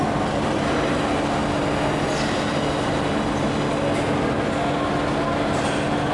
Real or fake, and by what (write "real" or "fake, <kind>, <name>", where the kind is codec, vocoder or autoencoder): real